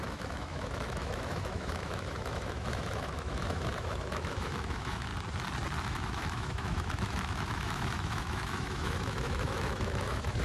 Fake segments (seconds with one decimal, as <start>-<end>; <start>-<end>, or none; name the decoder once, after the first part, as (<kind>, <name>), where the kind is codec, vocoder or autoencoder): 0.0-5.1 (autoencoder, DAC-VAE); 5.8-10.4